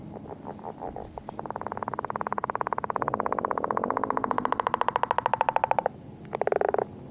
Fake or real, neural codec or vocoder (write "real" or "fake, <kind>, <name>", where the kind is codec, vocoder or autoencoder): real